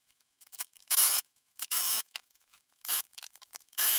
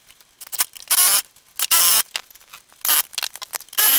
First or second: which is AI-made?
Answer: first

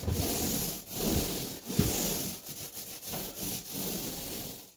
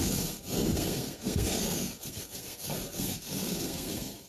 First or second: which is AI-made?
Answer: second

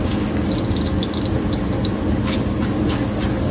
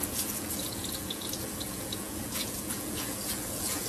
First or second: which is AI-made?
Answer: second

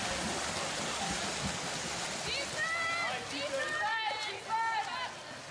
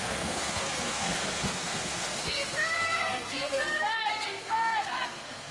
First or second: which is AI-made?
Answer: second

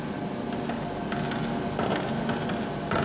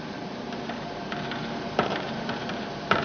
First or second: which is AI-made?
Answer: second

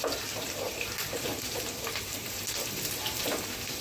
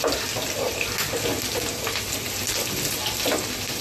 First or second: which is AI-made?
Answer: first